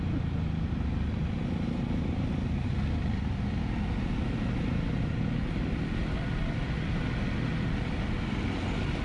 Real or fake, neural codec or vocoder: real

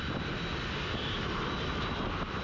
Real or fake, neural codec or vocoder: real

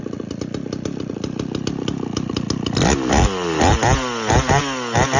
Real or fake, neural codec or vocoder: real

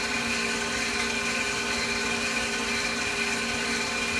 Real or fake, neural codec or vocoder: real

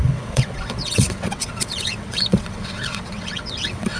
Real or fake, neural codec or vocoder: fake, vocoder, WaveNeXt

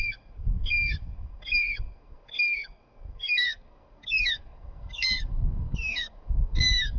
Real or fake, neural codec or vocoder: fake, codec, SNAC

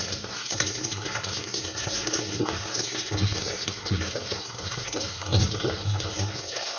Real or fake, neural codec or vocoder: fake, codec, SNAC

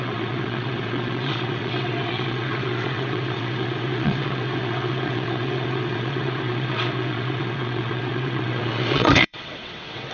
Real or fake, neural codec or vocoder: fake, vocoder, WaveNeXt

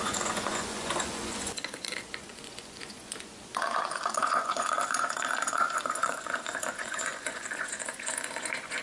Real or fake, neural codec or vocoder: fake, vocoder, Vocos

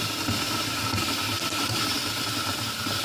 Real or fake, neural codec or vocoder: fake, vocoder, BigVGAN v2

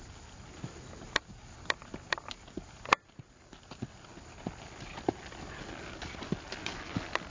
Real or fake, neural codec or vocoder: real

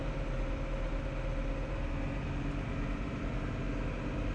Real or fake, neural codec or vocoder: real